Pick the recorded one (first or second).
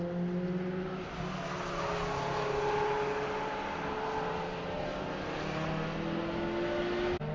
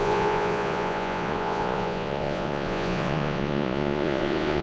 first